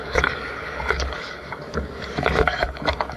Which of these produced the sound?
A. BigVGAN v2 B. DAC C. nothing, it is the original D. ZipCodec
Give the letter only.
B